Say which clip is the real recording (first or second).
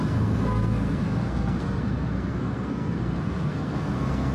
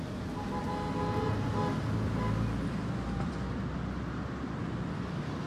second